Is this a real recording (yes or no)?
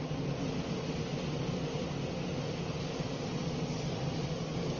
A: yes